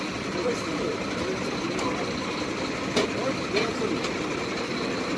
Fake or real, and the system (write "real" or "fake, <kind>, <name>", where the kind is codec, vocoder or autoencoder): real